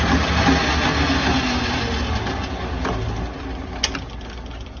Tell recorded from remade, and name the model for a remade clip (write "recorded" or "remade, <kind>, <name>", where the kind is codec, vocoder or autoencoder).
recorded